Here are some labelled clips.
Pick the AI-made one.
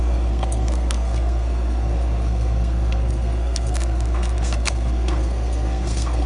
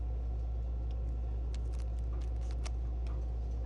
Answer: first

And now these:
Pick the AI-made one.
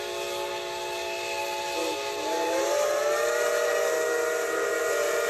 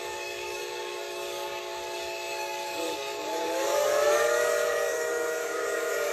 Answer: second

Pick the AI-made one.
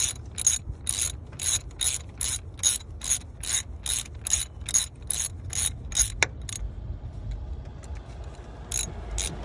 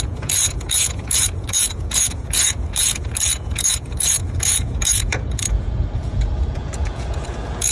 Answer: second